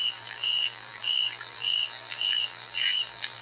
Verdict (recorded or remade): remade